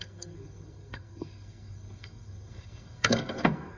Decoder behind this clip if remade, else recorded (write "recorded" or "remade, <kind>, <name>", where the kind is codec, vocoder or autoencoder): remade, codec, SNAC